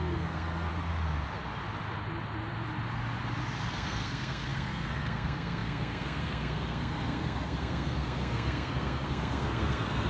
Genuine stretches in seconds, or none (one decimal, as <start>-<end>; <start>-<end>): 0.7-3.7